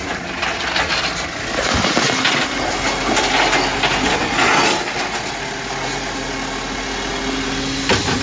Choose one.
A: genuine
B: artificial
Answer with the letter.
A